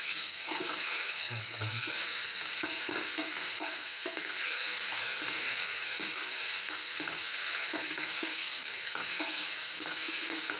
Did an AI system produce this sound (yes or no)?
yes